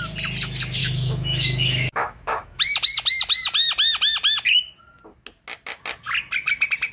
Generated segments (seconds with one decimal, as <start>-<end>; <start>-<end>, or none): 0.8-2.6